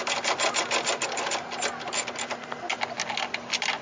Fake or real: real